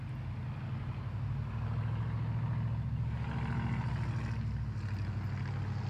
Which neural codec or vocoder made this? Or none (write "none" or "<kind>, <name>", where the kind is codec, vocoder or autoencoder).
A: none